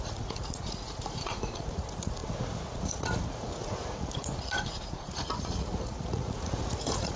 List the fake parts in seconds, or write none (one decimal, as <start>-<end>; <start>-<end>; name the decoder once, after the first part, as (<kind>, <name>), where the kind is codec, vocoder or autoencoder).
0.0-7.2 (vocoder, Vocos)